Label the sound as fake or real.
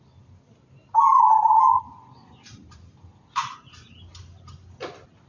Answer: real